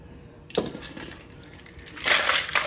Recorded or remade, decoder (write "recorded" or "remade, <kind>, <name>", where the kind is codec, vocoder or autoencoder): remade, vocoder, BigVGAN v2